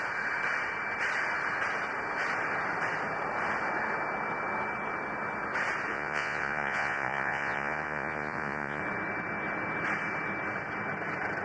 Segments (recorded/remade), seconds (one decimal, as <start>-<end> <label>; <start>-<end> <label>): 0.0-5.9 recorded; 5.9-8.8 remade; 8.8-11.4 recorded